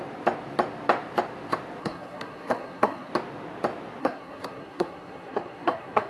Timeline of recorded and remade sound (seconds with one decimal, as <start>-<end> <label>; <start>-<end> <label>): 0.0-1.8 recorded; 1.8-3.1 remade; 3.1-4.0 recorded; 4.0-6.1 remade